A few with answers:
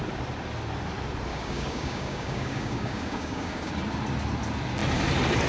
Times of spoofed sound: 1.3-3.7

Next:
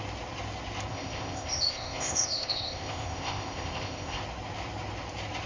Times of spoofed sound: 0.9-4.2

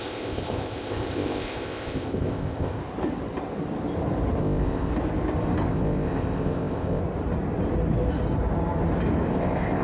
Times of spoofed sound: 0.0-2.8; 4.4-4.9; 5.7-7.0; 9.3-9.8

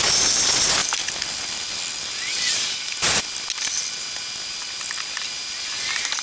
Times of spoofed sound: none

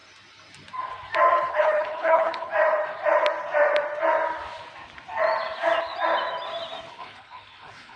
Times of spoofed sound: 1.5-2.5; 6.9-8.0